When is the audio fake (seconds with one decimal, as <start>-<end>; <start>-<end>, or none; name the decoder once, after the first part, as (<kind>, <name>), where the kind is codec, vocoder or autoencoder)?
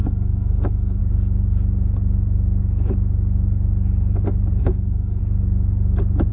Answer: 0.0-1.0 (codec, SNAC); 4.6-5.2